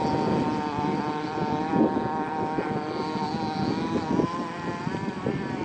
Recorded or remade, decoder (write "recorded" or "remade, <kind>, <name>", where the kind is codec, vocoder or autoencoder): recorded